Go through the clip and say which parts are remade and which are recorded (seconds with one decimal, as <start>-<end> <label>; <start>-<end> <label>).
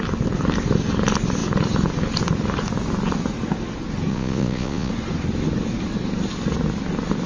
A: 0.0-4.1 recorded; 4.1-4.9 remade; 4.9-7.3 recorded